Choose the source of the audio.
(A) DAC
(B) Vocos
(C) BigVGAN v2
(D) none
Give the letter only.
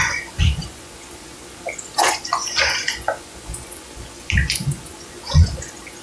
B